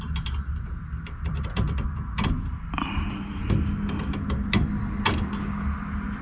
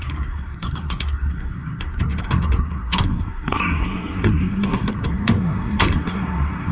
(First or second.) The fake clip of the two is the second